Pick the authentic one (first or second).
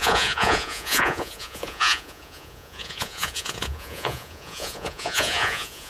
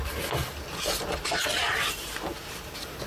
second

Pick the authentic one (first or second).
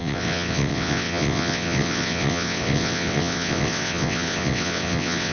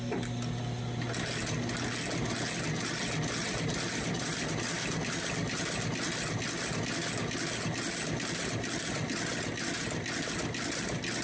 second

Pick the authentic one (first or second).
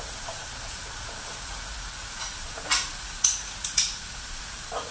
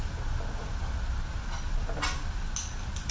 second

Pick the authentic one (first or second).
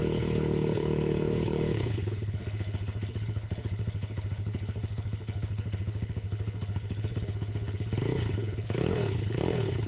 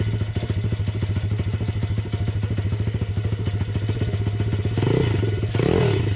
second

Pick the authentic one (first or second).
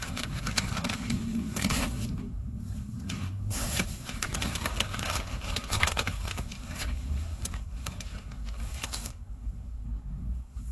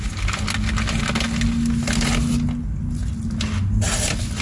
second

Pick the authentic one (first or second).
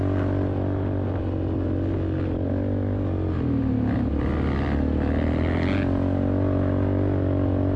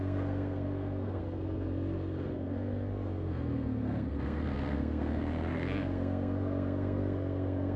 first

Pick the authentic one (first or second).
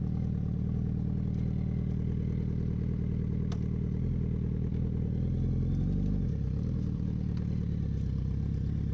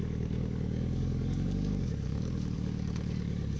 first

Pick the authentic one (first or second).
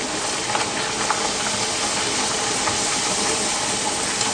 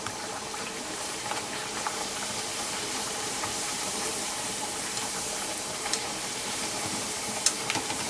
first